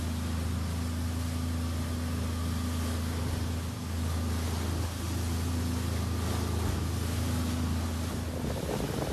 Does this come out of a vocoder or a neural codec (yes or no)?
no